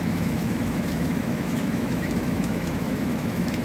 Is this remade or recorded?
remade